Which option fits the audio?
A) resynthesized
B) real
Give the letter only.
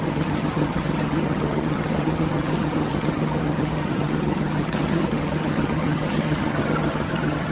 A